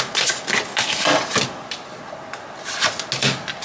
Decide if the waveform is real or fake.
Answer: real